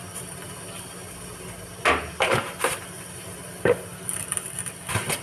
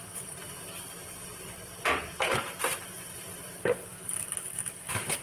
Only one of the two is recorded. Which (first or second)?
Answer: first